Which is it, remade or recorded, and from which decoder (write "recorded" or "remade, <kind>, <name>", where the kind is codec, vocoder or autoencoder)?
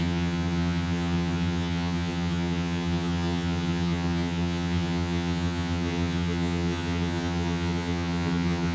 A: remade, vocoder, HiFi-GAN